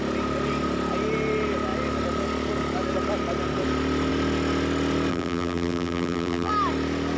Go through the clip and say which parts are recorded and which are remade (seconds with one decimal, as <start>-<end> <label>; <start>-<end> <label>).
0.0-5.1 recorded; 5.1-6.5 remade; 6.5-7.2 recorded